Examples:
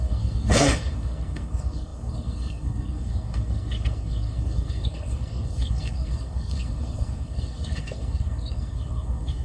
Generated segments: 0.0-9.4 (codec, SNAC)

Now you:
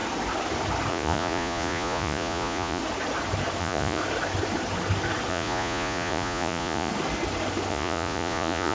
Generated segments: 0.9-2.8 (vocoder, Vocos); 3.6-4.0; 5.3-6.9; 7.7-8.7

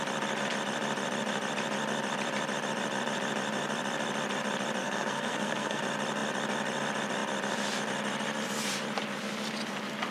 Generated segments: 4.8-5.8 (codec, SNAC)

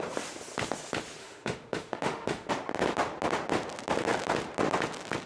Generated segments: 1.2-2.5 (autoencoder, DAC-VAE)